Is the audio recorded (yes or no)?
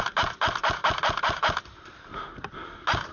yes